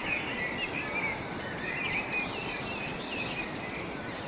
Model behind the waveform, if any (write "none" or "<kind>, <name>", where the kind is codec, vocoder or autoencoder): none